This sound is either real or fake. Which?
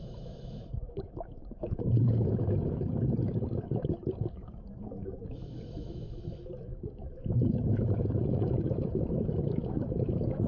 fake